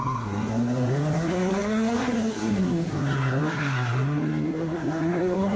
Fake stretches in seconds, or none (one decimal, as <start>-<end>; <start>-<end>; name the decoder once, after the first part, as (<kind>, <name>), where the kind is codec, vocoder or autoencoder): 0.0-5.6 (codec, SNAC)